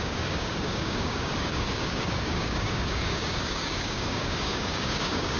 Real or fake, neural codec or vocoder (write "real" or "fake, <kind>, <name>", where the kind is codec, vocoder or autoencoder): fake, codec, DAC